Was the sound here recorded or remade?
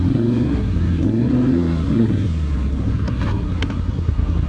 remade